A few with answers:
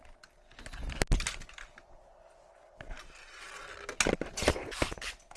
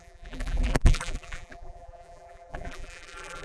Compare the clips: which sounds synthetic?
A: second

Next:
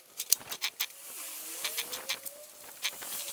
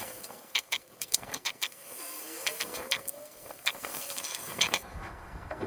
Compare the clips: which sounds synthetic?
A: second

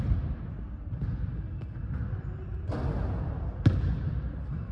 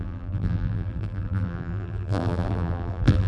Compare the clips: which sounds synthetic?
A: second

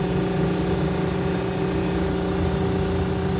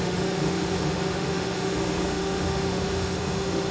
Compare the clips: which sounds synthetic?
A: second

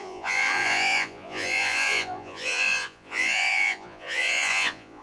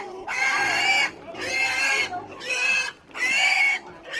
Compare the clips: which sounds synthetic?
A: first